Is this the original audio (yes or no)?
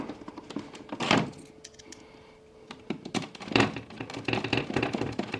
yes